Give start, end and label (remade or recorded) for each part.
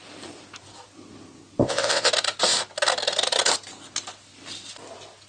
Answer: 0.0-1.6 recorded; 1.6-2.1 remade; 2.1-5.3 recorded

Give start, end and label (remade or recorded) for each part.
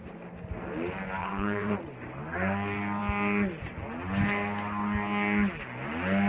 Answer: 0.0-1.2 recorded; 1.2-1.9 remade; 1.9-6.3 recorded